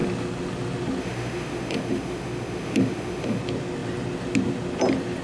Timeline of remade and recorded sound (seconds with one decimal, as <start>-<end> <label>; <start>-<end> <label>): 0.0-1.0 recorded; 1.0-3.4 remade; 3.4-5.2 recorded